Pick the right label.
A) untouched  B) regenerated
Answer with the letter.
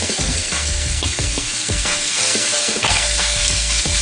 B